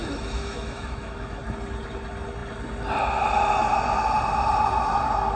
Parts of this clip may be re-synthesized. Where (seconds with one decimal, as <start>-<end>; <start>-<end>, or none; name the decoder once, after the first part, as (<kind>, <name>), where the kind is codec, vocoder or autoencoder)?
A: 0.0-1.4 (autoencoder, DAC-VAE)